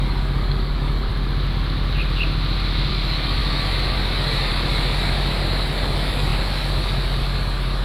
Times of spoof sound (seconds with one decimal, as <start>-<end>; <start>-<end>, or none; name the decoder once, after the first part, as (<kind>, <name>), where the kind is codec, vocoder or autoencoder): 0.0-1.1 (codec, DAC); 2.9-7.8